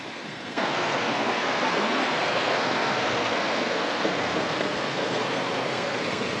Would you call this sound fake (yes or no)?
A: yes